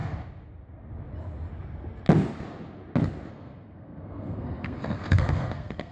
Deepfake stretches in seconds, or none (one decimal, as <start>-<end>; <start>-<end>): 3.3-5.9